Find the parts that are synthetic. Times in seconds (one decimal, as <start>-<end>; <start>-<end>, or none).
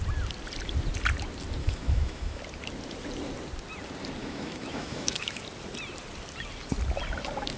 1.6-2.4; 4.2-5.4